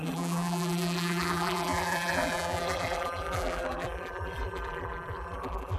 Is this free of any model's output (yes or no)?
no